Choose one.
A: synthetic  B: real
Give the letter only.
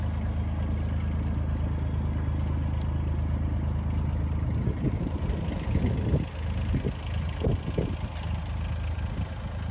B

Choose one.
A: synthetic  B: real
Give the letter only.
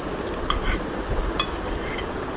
B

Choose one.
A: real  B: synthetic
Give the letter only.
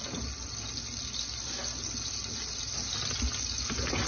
A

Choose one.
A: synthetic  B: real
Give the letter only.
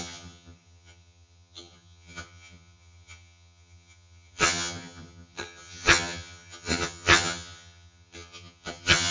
A